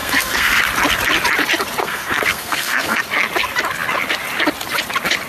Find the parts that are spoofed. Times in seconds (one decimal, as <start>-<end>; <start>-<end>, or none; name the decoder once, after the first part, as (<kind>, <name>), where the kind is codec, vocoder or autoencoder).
0.0-0.6 (codec, SNAC); 1.8-3.0